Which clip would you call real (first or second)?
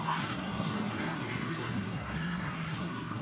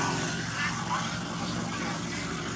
second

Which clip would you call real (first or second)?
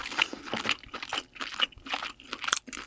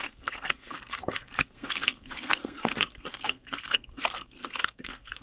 first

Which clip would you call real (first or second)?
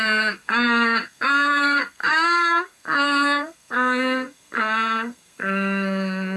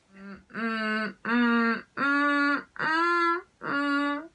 second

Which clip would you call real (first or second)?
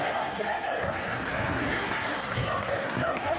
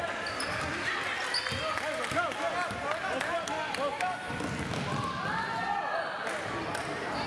second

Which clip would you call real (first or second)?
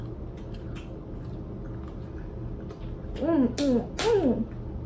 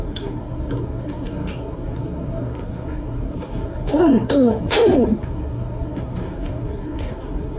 first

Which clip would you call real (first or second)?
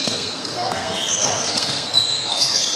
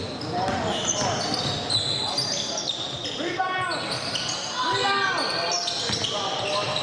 second